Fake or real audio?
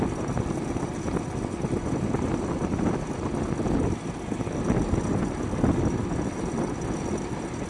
real